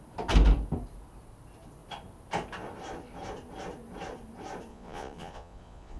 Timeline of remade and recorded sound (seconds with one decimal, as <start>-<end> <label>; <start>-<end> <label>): 0.0-4.7 recorded; 4.7-6.0 remade